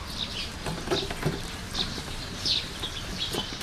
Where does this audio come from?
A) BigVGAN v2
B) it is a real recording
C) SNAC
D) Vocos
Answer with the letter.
B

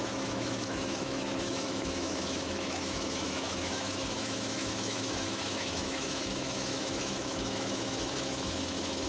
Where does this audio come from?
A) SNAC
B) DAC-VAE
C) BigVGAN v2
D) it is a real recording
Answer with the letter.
B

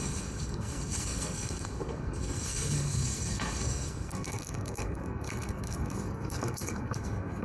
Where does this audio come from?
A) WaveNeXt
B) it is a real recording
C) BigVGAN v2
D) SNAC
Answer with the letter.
D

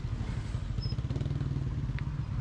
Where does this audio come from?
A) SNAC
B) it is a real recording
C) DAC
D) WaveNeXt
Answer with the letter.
B